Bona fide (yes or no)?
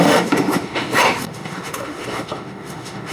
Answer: no